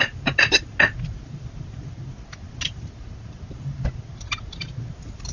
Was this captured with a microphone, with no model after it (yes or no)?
yes